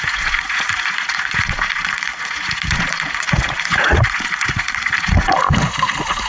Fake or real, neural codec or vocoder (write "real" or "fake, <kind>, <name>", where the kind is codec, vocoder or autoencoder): fake, vocoder, Vocos